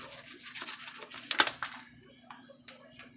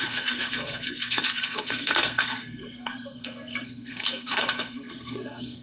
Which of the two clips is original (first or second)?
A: first